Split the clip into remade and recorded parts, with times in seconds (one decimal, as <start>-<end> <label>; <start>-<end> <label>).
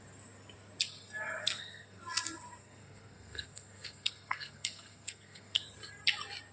0.0-1.4 recorded; 1.4-2.0 remade; 2.0-2.6 recorded; 2.6-5.6 remade; 5.6-6.5 recorded